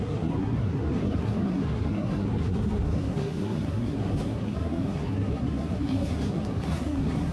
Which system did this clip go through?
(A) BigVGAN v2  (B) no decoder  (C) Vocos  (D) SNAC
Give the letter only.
D